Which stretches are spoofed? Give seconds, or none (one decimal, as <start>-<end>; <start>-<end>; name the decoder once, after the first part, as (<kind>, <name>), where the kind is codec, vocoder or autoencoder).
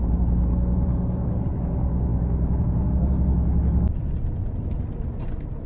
0.0-2.1 (codec, DAC)